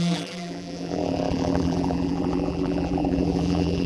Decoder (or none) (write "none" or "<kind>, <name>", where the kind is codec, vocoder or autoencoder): vocoder, BigVGAN v2